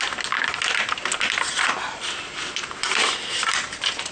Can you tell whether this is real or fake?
real